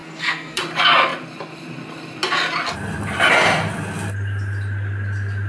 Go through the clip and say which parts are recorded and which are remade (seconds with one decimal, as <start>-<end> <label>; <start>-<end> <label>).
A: 0.0-0.6 remade; 0.6-5.5 recorded